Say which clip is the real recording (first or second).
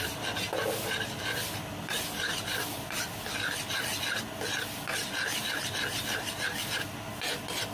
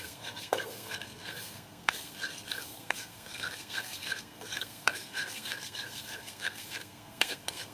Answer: first